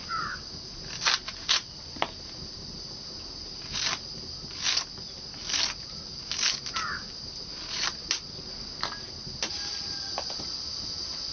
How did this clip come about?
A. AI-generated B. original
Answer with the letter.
B